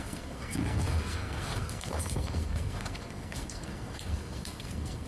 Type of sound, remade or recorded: remade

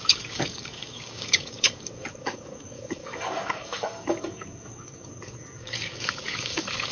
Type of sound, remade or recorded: remade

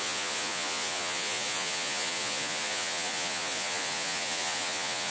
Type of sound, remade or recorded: remade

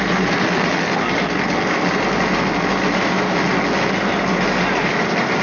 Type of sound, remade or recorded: recorded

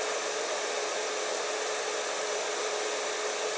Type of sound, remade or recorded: recorded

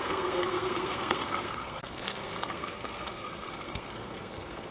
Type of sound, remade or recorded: remade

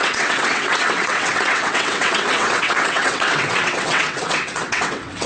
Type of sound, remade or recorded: remade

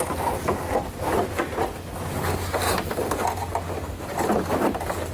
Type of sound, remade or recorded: recorded